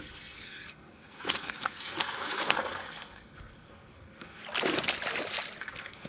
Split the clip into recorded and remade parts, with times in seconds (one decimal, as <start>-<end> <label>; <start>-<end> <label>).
0.0-4.4 remade; 4.4-5.6 recorded; 5.6-6.1 remade